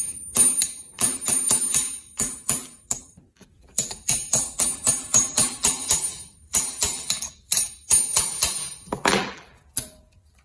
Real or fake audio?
fake